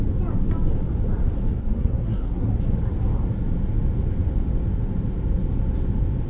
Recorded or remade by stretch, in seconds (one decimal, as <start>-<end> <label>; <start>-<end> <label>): 0.0-1.6 recorded; 1.6-2.6 remade; 2.6-6.3 recorded